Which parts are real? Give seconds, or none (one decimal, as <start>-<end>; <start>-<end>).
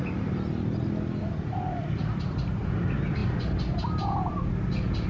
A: 0.0-5.1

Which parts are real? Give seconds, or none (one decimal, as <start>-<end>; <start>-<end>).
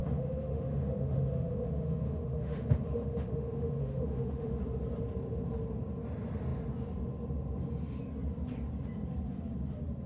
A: 4.6-10.1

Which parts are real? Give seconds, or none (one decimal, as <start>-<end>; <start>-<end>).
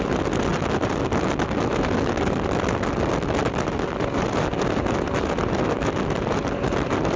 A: 0.0-7.2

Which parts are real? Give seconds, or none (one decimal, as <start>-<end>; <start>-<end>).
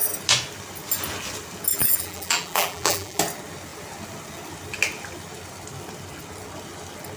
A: 0.0-1.7; 3.2-7.2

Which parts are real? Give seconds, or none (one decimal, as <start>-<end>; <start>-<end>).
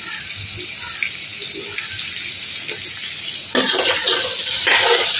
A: 0.0-5.2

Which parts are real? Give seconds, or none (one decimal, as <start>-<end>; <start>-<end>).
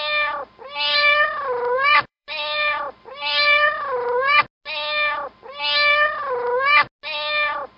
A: 0.0-0.9; 4.4-7.8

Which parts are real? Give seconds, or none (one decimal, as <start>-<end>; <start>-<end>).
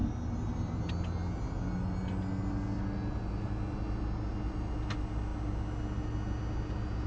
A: 0.0-7.1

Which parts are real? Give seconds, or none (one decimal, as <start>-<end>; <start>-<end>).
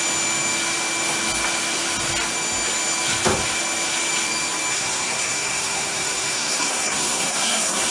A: 0.0-4.7